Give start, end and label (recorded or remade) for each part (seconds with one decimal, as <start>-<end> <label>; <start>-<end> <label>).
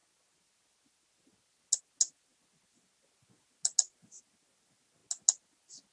0.0-5.9 recorded